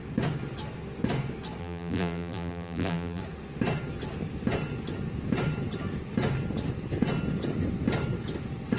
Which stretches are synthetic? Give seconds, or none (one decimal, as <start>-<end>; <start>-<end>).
1.6-3.2